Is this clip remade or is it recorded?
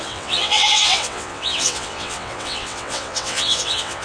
remade